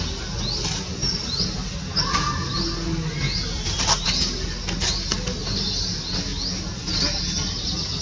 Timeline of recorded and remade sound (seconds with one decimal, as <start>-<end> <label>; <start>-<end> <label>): 0.0-8.0 recorded